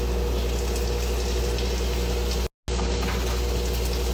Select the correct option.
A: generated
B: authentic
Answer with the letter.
B